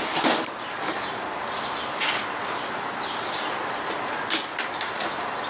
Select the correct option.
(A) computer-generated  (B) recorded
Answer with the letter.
B